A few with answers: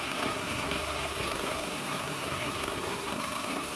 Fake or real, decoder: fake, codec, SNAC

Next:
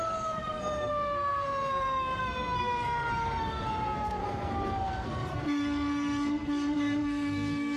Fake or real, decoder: fake, codec, SNAC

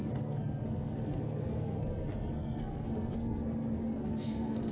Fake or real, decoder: fake, codec, SNAC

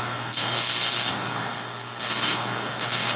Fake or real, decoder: fake, codec, SNAC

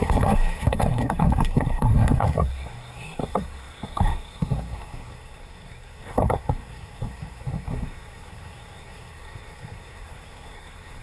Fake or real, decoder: fake, codec, SNAC